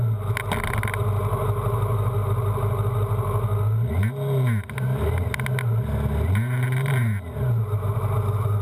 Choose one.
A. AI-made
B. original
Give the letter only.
B